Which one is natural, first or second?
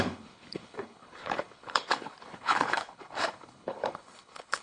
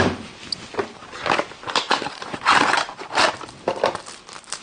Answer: second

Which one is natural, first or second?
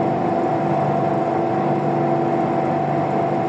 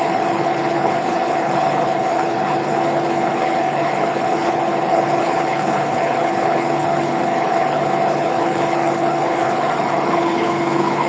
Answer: first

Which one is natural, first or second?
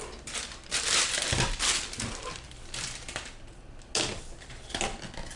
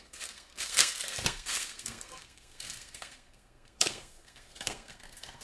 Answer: first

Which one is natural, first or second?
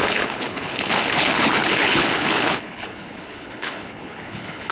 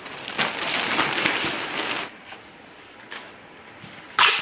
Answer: second